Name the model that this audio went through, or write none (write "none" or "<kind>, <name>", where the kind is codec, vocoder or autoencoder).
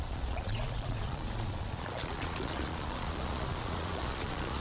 vocoder, Vocos